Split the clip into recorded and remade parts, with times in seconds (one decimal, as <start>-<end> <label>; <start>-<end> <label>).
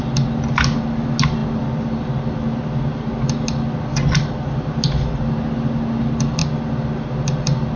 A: 0.0-7.8 recorded